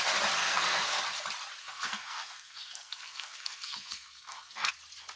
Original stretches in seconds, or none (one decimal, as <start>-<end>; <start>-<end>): 0.0-0.4; 1.0-1.6; 4.7-5.2